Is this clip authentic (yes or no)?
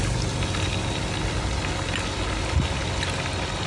yes